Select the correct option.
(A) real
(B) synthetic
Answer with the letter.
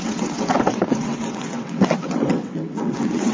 B